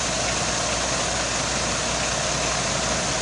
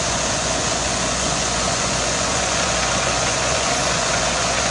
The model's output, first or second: second